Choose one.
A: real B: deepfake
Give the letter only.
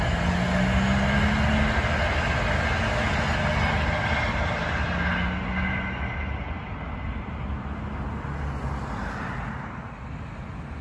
A